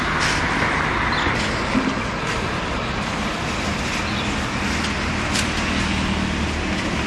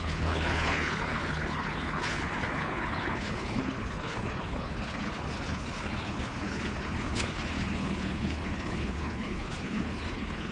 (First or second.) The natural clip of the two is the first